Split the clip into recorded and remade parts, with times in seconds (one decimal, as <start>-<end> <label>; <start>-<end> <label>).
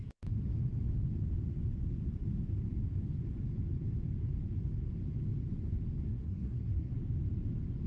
0.0-6.1 recorded; 6.1-6.9 remade; 6.9-7.9 recorded